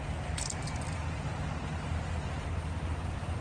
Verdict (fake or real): real